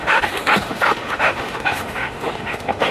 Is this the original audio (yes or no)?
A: no